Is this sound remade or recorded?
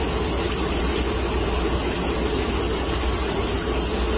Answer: recorded